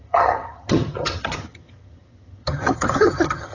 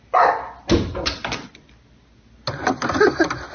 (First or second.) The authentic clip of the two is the second